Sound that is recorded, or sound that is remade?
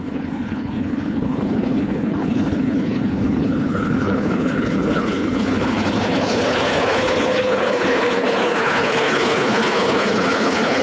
remade